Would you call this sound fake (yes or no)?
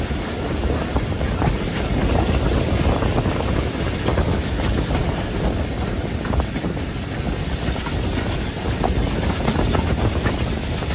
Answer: no